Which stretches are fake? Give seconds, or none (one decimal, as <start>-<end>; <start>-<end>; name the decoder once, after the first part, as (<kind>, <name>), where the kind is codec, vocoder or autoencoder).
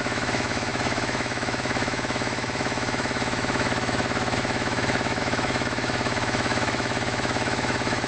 0.0-8.1 (autoencoder, DAC-VAE)